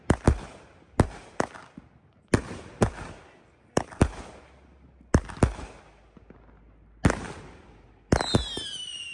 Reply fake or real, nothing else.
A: real